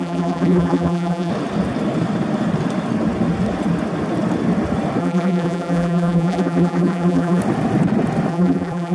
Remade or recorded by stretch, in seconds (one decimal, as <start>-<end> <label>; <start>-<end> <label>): 0.0-1.3 remade; 1.3-5.0 recorded; 5.0-7.4 remade; 7.4-8.3 recorded; 8.3-8.9 remade